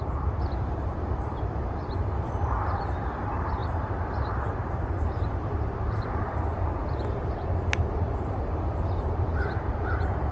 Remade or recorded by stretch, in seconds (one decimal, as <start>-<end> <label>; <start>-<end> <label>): 0.0-10.3 remade